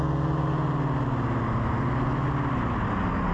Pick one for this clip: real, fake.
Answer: real